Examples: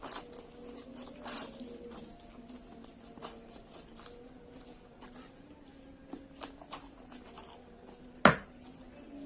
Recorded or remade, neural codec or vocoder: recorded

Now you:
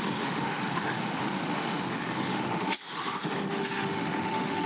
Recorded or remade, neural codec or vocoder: remade, autoencoder, DAC-VAE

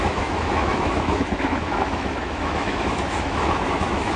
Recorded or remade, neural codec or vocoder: remade, autoencoder, DAC-VAE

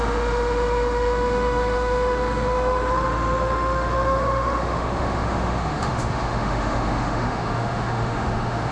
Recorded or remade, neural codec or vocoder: remade, autoencoder, DAC-VAE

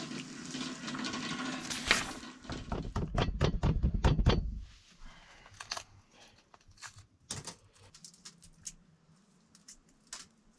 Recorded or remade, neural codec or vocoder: recorded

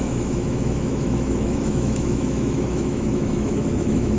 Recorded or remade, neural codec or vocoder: remade, autoencoder, DAC-VAE